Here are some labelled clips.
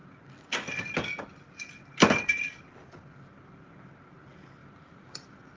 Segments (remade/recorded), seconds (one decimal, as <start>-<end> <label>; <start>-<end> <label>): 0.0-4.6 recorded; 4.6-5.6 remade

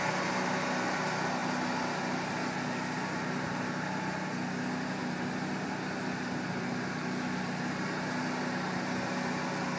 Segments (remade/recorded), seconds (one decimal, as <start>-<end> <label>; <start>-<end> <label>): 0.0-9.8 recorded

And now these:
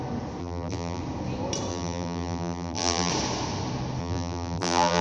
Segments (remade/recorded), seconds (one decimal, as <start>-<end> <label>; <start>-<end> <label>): 0.0-0.4 recorded; 0.4-1.0 remade; 1.0-1.7 recorded; 1.7-3.1 remade; 3.1-4.0 recorded; 4.0-5.0 remade